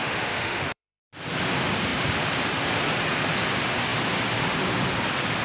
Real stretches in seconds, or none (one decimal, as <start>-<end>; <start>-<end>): 1.0-5.4